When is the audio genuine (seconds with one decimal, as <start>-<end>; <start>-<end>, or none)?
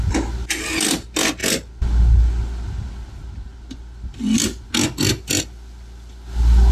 0.0-6.7